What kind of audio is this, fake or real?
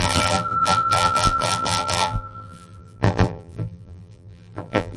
fake